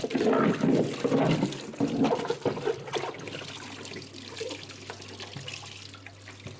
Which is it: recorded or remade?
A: recorded